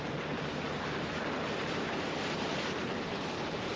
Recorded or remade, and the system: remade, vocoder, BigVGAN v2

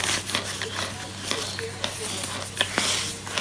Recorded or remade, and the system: recorded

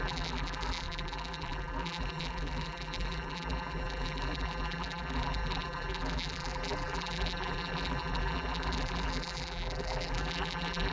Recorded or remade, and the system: remade, vocoder, BigVGAN v2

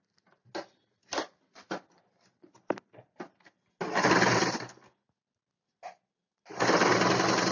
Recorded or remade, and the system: recorded